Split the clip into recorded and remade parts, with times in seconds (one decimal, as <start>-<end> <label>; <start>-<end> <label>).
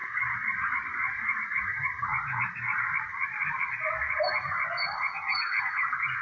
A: 0.0-6.2 remade